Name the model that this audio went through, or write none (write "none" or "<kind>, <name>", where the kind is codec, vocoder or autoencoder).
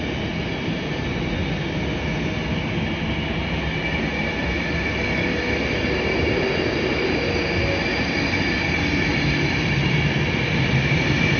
none